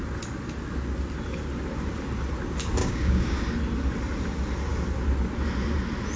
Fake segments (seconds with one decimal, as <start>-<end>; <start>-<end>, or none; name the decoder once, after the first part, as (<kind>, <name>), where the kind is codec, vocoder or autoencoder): 2.8-3.4 (codec, DAC)